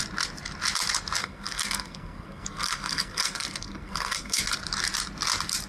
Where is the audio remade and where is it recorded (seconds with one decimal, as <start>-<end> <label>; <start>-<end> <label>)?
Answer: 0.0-1.2 recorded; 1.2-4.4 remade; 4.4-5.7 recorded